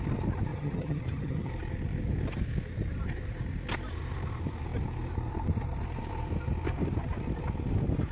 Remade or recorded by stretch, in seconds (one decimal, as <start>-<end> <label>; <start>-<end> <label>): 0.0-0.5 recorded; 0.5-1.5 remade; 1.5-8.1 recorded